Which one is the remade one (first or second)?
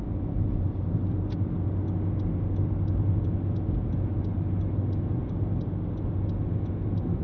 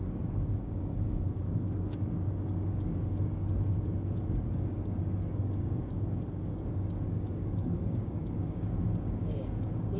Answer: second